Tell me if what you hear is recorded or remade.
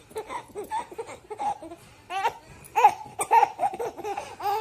recorded